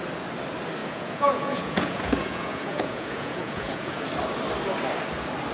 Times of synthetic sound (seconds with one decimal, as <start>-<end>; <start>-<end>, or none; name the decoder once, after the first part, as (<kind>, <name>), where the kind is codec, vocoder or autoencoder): 0.8-4.1 (vocoder, Vocos)